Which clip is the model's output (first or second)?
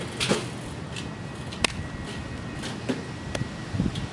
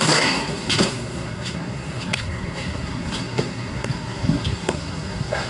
second